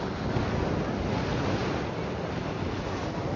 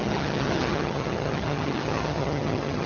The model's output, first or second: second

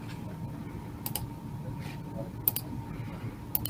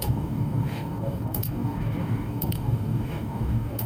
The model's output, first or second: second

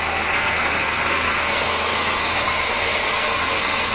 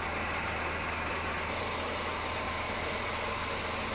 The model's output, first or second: first